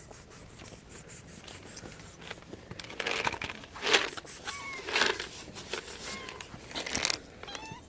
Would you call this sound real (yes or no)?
yes